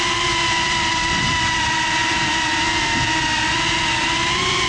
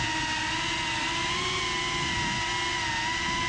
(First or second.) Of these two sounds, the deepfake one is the first